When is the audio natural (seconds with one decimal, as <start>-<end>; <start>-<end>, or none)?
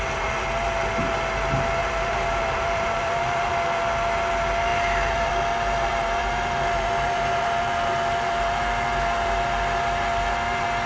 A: 0.0-1.8; 3.5-4.7; 5.3-5.9; 7.6-10.9